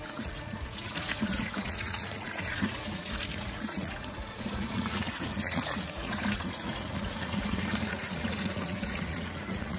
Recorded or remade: remade